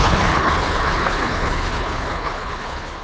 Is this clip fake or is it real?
fake